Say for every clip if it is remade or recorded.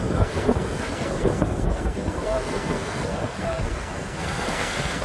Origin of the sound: remade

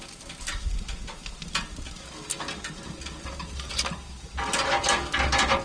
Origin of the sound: recorded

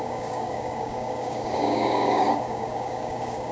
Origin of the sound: remade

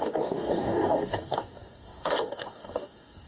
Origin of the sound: remade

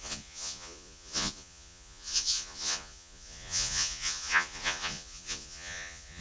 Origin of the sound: remade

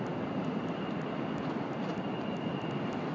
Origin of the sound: recorded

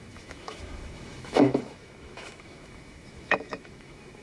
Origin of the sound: remade